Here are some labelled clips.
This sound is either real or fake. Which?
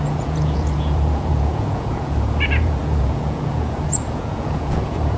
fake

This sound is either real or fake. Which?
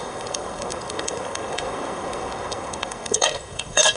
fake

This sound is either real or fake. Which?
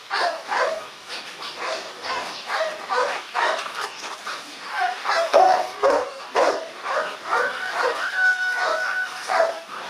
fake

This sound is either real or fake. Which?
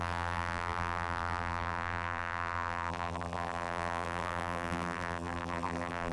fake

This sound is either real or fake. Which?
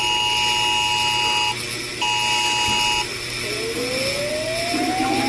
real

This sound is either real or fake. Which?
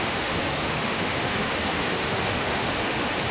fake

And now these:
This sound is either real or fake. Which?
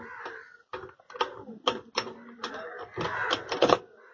real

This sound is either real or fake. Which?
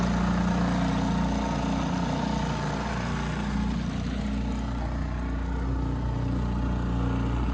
real